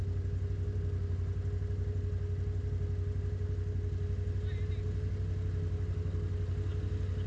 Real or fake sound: real